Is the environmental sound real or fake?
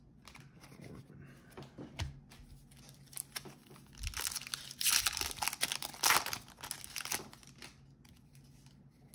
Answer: real